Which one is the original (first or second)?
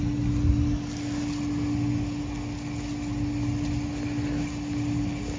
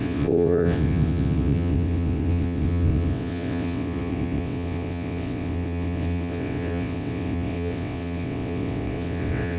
first